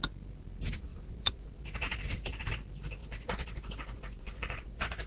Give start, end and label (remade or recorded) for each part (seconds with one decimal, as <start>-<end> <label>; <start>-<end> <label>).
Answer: 0.0-0.9 recorded; 0.9-1.5 remade; 1.5-3.0 recorded; 3.0-5.1 remade